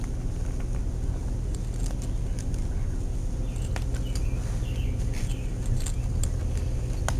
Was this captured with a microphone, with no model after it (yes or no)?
yes